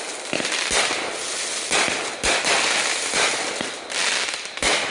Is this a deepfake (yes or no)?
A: no